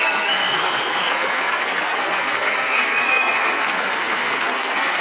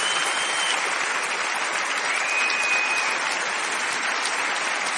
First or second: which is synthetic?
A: first